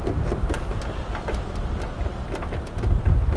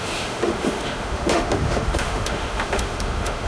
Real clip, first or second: first